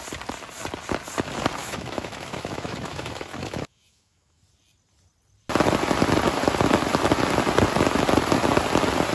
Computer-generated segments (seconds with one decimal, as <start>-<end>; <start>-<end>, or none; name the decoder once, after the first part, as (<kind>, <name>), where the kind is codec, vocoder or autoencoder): 1.6-4.4 (autoencoder, DAC-VAE)